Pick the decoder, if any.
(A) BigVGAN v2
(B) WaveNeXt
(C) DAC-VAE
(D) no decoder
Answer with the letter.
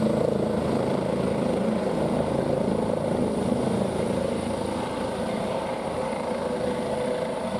D